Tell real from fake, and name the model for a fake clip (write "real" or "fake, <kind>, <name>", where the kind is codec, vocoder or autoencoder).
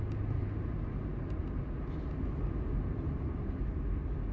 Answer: real